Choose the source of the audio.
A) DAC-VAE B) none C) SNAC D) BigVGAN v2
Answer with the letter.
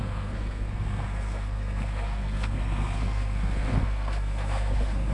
C